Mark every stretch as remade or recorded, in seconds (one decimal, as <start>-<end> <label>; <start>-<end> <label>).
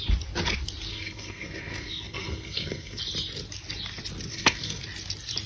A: 0.0-0.9 recorded; 0.9-3.0 remade; 3.0-4.3 recorded; 4.3-4.8 remade; 4.8-5.5 recorded